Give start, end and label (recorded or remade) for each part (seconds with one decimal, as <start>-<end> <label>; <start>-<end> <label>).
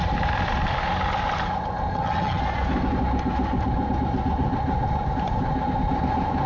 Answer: 0.0-1.9 recorded; 1.9-2.4 remade; 2.4-6.5 recorded